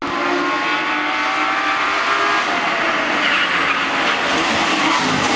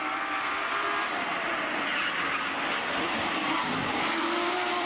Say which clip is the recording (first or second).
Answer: first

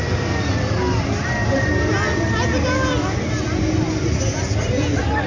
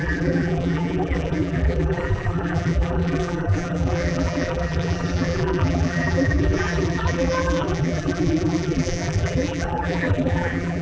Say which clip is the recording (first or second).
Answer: first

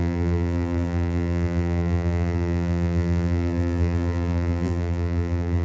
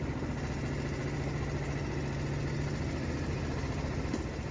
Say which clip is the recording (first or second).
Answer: second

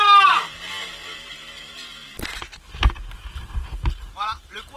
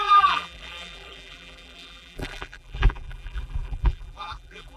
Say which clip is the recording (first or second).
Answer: first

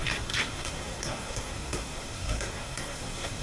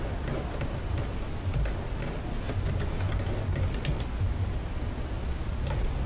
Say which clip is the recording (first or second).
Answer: second